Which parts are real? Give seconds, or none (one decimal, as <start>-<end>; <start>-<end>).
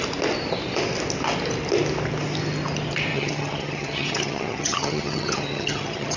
0.0-3.1